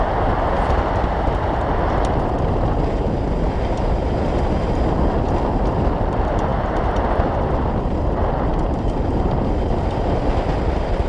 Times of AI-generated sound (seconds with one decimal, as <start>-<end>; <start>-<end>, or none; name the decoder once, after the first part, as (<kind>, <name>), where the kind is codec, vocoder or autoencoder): none